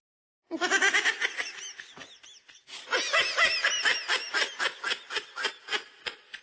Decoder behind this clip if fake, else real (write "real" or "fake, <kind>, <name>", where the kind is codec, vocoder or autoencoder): real